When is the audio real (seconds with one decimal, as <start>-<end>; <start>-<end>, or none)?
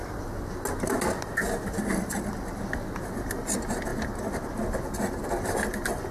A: 0.0-6.1